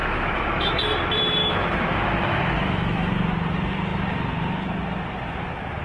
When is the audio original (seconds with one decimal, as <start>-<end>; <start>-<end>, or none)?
0.8-1.4; 3.1-5.8